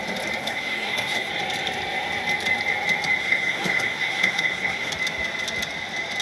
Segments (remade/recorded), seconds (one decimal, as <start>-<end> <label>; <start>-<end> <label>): 0.0-0.4 recorded; 0.4-1.3 remade; 1.3-3.2 recorded; 3.2-4.9 remade; 4.9-6.2 recorded